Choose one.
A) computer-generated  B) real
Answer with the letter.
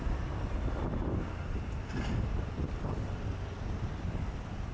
B